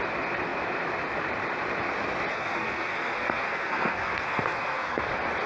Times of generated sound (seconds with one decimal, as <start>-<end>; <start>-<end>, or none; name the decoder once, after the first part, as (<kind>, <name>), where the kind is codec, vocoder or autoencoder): 2.3-5.1 (codec, SNAC)